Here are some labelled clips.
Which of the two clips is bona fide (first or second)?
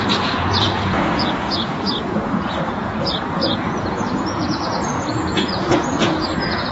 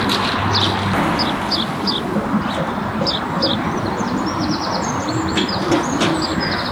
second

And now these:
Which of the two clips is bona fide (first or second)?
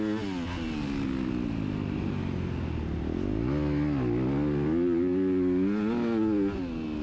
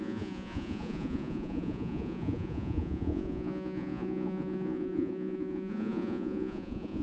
first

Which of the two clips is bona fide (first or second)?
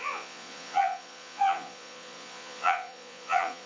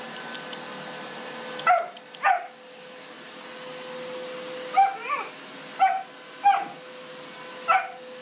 second